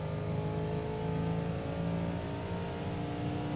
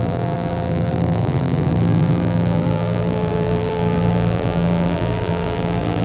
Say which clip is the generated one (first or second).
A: second